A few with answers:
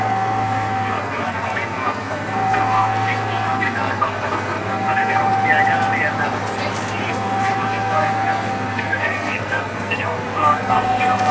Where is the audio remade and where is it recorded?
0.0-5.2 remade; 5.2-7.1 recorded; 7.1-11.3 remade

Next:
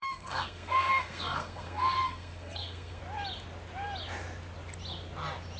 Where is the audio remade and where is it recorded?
0.0-3.0 remade; 3.0-5.6 recorded